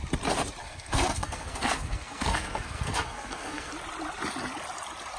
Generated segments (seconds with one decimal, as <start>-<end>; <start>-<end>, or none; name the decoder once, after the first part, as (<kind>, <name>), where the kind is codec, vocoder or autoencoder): 0.6-3.7 (codec, SNAC)